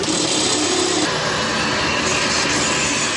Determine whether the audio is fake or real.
real